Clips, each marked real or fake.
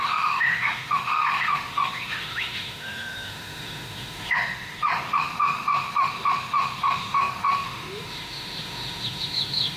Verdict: fake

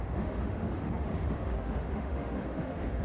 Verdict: fake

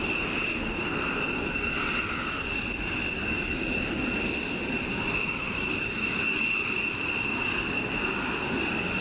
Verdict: real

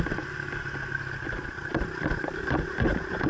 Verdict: real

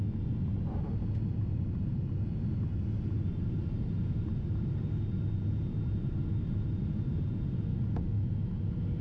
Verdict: real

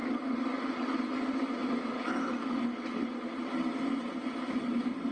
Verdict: real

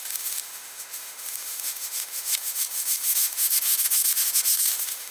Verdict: fake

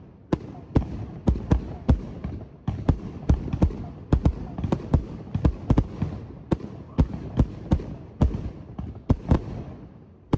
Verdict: real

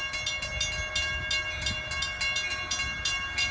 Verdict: real